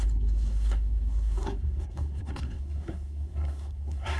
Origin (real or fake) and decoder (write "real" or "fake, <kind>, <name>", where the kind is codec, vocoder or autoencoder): fake, codec, SNAC